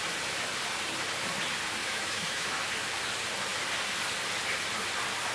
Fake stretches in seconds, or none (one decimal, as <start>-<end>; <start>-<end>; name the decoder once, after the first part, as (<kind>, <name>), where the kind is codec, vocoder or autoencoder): 1.8-2.5 (autoencoder, DAC-VAE)